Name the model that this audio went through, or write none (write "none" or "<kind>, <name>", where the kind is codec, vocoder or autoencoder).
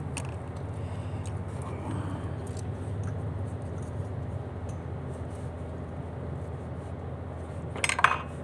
none